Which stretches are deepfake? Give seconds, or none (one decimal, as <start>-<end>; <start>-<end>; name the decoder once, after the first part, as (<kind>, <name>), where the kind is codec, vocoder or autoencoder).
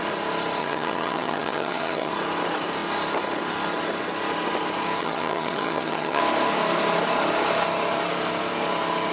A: 0.6-2.1 (vocoder, HiFi-GAN); 5.0-6.2